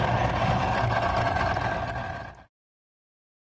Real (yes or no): yes